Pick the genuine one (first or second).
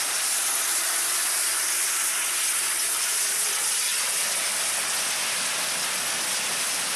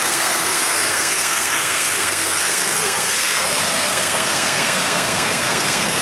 first